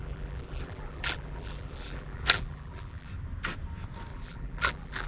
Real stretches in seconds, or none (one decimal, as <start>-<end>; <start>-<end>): 3.1-4.1